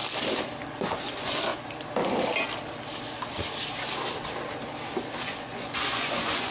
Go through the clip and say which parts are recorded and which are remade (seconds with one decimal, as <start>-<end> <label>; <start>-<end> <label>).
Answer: 0.0-0.9 recorded; 0.9-1.5 remade; 1.5-5.2 recorded; 5.2-6.5 remade